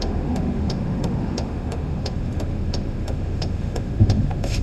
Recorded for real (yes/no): no